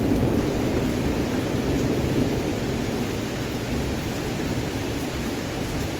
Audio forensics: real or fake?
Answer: real